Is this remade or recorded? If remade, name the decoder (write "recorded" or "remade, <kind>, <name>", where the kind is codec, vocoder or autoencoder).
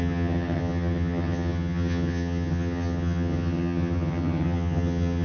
remade, vocoder, HiFi-GAN